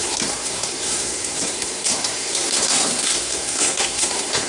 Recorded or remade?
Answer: remade